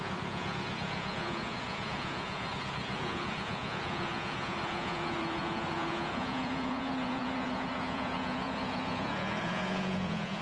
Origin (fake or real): fake